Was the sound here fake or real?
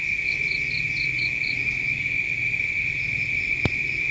real